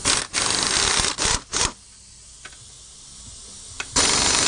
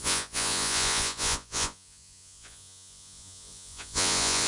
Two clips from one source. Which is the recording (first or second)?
first